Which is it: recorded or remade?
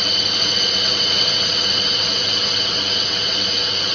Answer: remade